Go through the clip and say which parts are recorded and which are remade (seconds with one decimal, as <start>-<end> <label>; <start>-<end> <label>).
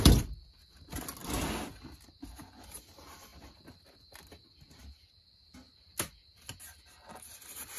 0.0-7.8 recorded